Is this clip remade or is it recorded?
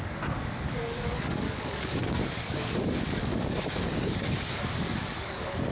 remade